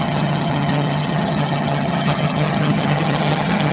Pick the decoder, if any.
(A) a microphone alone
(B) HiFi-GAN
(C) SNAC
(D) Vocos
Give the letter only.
B